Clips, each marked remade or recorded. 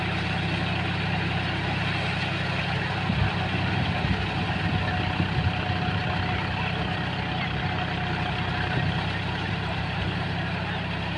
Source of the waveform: recorded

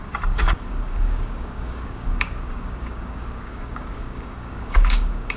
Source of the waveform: remade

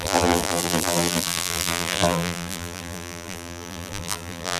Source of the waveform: remade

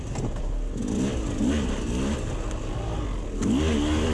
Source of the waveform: recorded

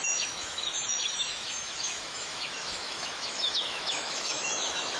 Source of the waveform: remade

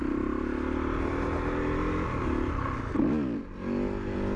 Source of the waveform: recorded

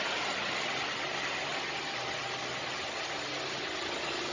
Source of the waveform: recorded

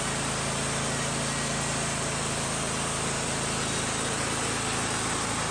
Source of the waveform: recorded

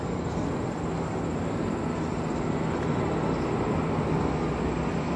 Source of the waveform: recorded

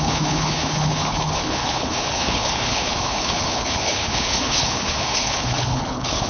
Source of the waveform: remade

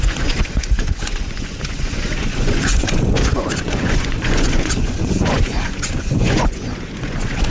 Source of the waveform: remade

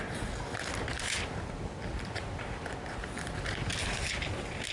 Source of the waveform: recorded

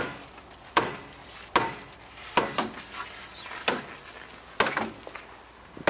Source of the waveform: recorded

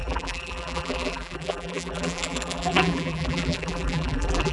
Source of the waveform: remade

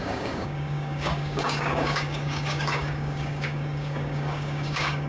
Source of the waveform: remade